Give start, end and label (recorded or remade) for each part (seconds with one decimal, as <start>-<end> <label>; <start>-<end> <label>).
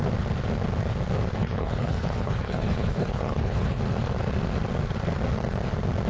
0.0-1.4 recorded; 1.4-3.8 remade; 3.8-6.1 recorded